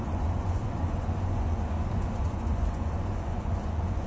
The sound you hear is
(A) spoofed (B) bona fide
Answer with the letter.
A